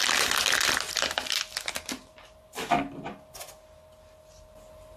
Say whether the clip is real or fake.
real